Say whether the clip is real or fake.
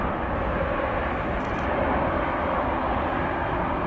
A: real